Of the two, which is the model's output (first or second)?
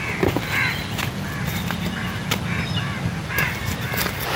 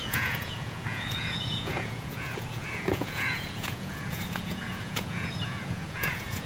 second